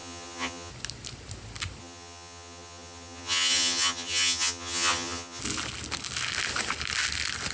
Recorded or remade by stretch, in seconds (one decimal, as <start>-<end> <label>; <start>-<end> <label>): 0.0-0.7 remade; 0.7-1.8 recorded; 1.8-5.4 remade; 5.4-7.5 recorded